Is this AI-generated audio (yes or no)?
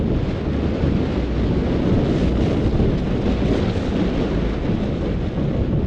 no